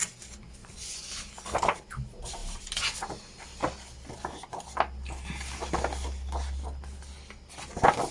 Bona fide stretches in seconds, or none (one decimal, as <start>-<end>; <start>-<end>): 0.0-0.6; 1.2-8.1